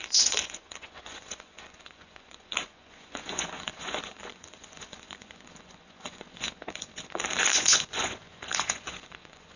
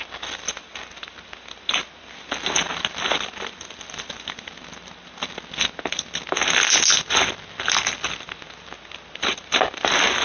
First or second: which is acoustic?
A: second